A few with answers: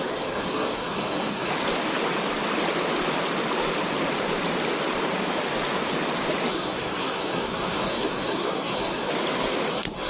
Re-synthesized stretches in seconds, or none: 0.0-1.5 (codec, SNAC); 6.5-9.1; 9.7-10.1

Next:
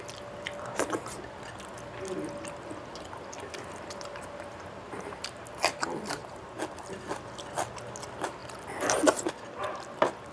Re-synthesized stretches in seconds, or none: none

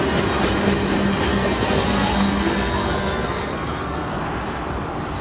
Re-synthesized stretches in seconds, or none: 1.3-4.2 (codec, SNAC)

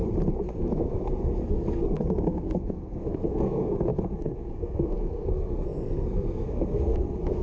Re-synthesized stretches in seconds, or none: 0.7-7.4 (codec, SNAC)

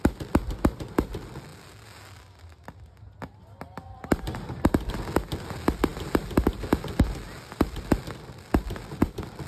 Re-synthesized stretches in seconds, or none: none

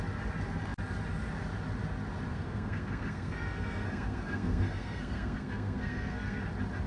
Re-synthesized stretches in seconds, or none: 2.3-6.4 (codec, SNAC)

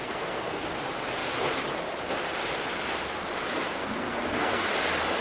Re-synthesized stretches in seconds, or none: 0.0-0.7 (codec, SNAC); 3.5-4.7

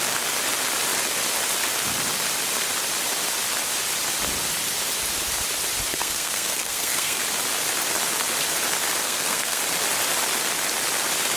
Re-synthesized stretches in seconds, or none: 5.9-7.2 (codec, SNAC); 9.0-9.6